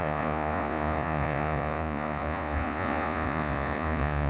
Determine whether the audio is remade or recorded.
remade